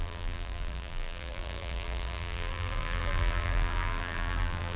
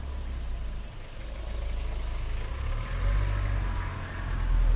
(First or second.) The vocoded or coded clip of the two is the first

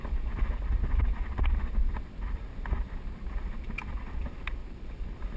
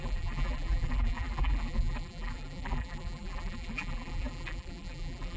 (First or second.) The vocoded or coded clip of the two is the second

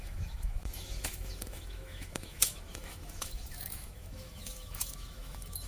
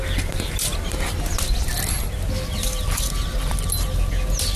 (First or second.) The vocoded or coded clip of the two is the first